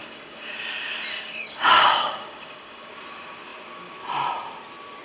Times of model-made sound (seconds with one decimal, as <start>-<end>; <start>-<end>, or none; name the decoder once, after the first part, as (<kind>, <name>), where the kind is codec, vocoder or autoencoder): 0.0-0.5 (codec, DAC); 1.1-2.9